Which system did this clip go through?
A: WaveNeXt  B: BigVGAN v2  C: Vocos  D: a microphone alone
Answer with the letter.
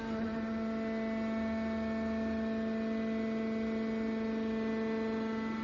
D